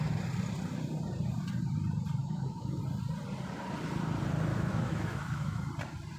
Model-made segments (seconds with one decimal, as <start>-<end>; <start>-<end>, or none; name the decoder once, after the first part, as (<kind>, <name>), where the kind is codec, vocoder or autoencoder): 2.2-2.8 (autoencoder, DAC-VAE); 4.5-5.7